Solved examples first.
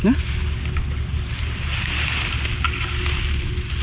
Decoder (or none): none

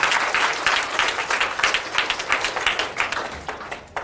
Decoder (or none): none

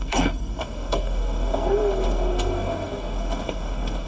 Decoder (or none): codec, SNAC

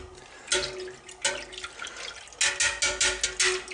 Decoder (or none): none